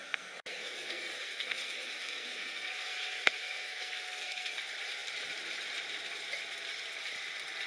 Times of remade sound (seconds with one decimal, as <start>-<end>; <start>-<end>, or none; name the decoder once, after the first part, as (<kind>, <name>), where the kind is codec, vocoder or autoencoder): 0.0-4.6 (codec, SNAC)